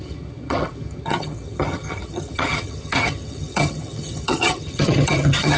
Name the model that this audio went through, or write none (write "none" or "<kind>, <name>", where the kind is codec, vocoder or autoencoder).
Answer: vocoder, HiFi-GAN